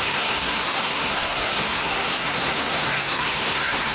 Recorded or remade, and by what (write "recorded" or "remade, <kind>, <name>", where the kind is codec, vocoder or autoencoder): remade, codec, SNAC